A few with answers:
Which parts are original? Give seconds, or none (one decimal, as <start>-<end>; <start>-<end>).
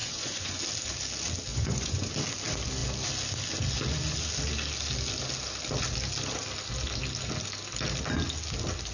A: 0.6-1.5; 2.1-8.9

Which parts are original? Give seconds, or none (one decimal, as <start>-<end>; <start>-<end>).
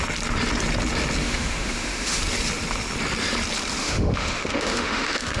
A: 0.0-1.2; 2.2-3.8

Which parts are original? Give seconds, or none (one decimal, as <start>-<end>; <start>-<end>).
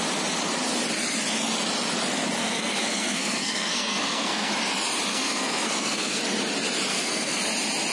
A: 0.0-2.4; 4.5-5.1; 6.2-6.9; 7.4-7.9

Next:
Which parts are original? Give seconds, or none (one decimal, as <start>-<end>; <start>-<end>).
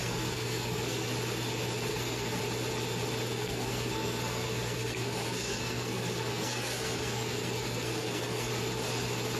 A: 1.1-1.9; 2.4-3.3; 8.5-9.4